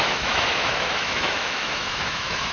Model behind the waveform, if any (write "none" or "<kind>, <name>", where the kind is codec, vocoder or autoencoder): autoencoder, DAC-VAE